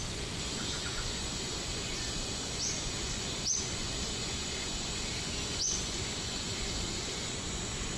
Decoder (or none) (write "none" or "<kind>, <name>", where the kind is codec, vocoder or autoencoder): vocoder, Vocos